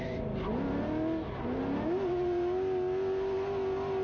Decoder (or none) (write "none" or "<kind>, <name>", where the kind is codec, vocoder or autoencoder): none